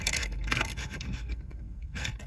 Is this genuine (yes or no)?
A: no